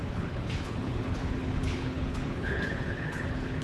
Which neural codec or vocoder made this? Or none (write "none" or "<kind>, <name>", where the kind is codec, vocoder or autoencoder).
codec, HILCodec